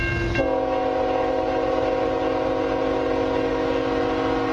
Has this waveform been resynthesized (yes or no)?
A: no